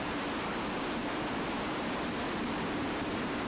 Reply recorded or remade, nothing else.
remade